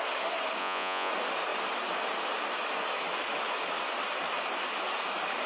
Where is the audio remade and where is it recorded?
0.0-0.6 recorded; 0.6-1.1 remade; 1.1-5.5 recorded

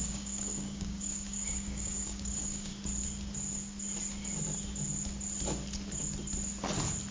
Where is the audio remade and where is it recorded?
0.0-2.7 remade; 2.7-7.1 recorded

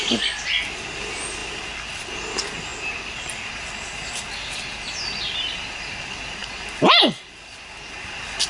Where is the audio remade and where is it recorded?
0.0-8.5 recorded

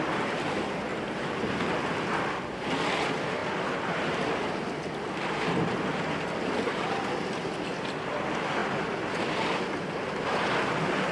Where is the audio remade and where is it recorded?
0.0-0.9 recorded; 0.9-2.7 remade; 2.7-11.1 recorded

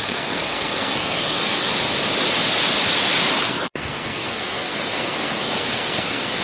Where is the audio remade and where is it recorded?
0.0-1.7 remade; 1.7-3.4 recorded; 3.4-6.4 remade